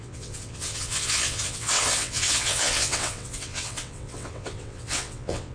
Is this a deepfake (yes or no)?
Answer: yes